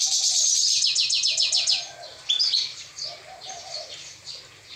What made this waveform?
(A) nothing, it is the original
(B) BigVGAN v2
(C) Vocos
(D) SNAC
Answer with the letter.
A